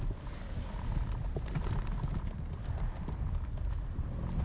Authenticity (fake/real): real